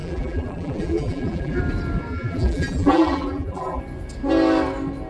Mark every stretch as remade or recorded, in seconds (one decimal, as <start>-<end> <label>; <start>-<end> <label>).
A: 0.0-1.6 remade; 1.6-2.1 recorded; 2.1-3.8 remade; 3.8-5.1 recorded